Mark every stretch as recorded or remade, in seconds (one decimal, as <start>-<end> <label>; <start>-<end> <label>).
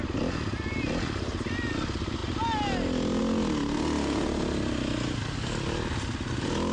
0.0-6.7 recorded